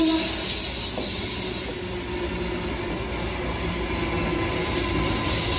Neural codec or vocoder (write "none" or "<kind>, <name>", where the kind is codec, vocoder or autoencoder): none